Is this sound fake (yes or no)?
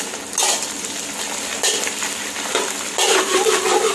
yes